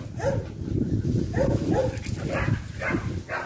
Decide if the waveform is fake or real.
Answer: real